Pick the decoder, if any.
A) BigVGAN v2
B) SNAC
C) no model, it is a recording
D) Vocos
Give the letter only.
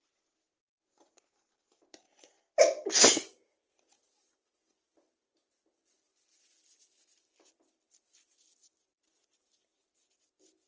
C